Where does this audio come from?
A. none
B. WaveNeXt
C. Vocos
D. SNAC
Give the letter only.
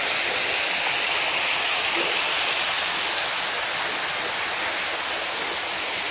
A